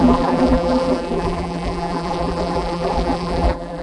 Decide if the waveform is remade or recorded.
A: remade